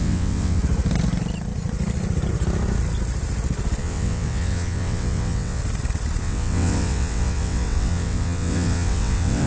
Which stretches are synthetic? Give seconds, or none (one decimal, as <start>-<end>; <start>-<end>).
0.0-0.6; 3.8-5.6; 6.2-9.5